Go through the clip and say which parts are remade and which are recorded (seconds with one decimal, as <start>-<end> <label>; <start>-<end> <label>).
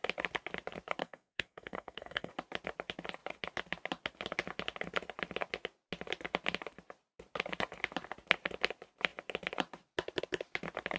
0.0-1.0 recorded; 1.0-2.3 remade; 2.3-11.0 recorded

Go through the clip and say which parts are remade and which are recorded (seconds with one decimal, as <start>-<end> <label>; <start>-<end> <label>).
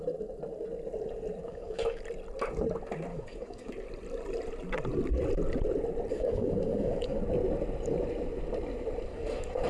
0.0-1.4 recorded; 1.4-2.0 remade; 2.0-3.1 recorded; 3.1-3.7 remade; 3.7-6.1 recorded; 6.1-7.2 remade; 7.2-9.1 recorded; 9.1-9.7 remade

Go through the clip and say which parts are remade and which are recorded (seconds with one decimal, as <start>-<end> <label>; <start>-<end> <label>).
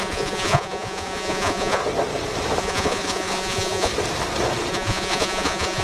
0.0-1.8 remade; 1.8-2.6 recorded; 2.6-3.9 remade; 3.9-4.7 recorded; 4.7-5.8 remade